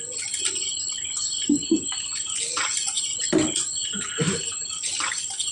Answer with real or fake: real